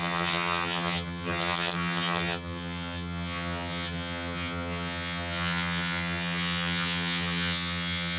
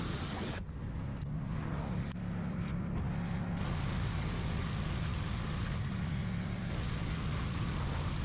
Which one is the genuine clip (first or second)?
second